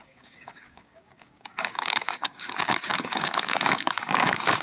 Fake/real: fake